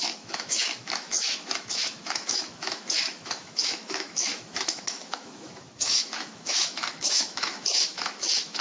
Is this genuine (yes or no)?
no